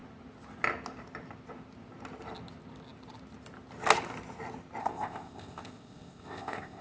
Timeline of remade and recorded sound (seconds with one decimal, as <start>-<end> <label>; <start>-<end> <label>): 0.0-4.8 recorded; 4.8-6.8 remade